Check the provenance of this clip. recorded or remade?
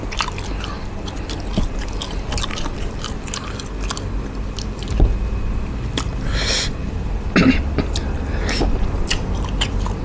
recorded